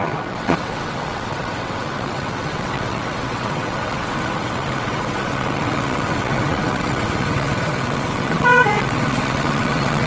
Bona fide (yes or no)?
no